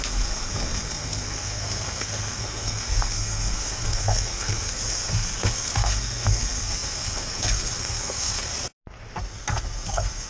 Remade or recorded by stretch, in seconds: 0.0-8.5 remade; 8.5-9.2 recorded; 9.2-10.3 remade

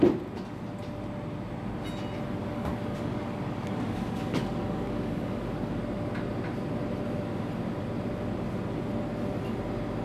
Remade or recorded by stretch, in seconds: 0.0-2.4 recorded; 2.4-5.7 remade; 5.7-10.0 recorded